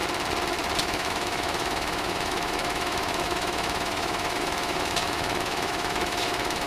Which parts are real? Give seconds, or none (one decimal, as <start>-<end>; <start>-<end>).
0.0-0.8